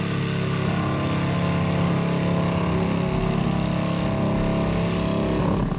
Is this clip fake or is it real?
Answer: real